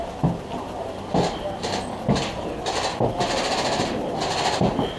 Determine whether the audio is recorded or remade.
recorded